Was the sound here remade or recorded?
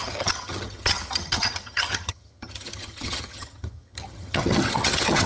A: remade